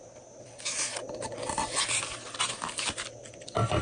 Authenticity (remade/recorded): recorded